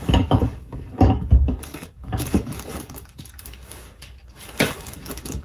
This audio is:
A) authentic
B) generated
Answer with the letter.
B